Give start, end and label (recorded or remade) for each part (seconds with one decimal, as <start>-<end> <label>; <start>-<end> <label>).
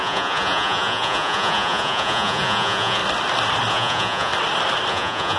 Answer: 0.0-3.0 remade; 3.0-3.7 recorded; 3.7-4.3 remade; 4.3-4.9 recorded; 4.9-5.4 remade